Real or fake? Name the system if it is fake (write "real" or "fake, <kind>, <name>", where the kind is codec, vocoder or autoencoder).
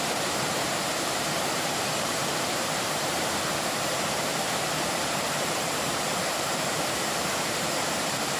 fake, vocoder, BigVGAN v2